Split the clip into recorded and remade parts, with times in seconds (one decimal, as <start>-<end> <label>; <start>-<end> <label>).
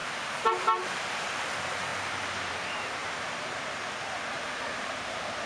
0.0-1.5 recorded; 1.5-1.9 remade; 1.9-2.5 recorded; 2.5-3.0 remade; 3.0-4.3 recorded; 4.3-5.5 remade